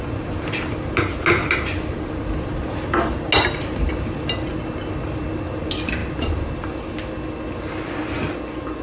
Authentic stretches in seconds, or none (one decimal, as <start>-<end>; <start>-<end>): 0.0-8.8